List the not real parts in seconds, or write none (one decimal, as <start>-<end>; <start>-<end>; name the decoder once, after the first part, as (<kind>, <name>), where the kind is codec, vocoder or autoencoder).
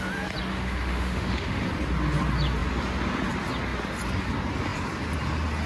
0.5-1.6 (autoencoder, DAC-VAE)